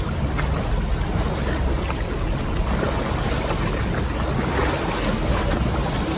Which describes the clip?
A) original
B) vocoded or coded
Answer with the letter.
A